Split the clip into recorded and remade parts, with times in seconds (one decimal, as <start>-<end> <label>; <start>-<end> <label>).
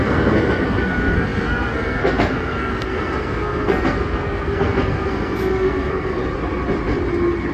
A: 0.0-6.2 remade; 6.2-7.5 recorded